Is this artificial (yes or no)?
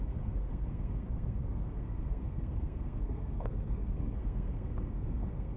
yes